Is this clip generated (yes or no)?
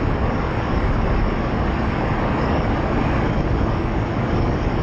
yes